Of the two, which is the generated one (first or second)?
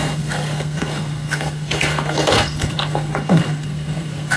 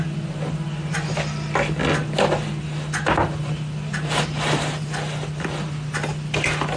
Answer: first